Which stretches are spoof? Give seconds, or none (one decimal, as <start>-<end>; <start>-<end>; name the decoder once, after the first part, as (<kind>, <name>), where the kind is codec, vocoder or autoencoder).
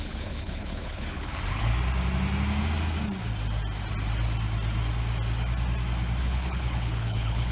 0.0-1.7 (codec, HILCodec); 6.2-7.5